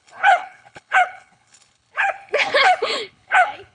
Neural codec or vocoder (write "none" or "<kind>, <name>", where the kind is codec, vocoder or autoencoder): codec, HILCodec